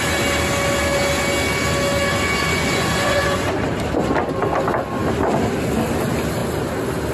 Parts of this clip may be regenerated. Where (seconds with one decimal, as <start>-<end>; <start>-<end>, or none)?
2.1-3.5